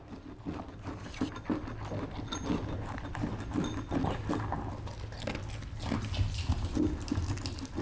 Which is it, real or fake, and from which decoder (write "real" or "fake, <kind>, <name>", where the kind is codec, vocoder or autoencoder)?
real